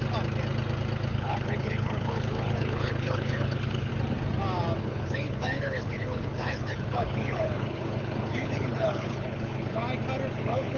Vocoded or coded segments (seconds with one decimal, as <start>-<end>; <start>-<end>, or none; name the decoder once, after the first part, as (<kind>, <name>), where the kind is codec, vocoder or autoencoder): 1.1-3.9 (codec, HILCodec); 4.8-9.8; 10.4-10.8